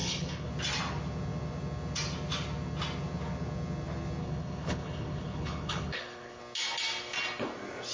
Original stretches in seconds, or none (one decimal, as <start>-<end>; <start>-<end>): 0.5-4.2; 6.4-7.9